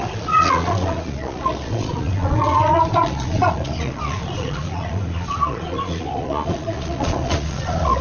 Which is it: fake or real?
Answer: fake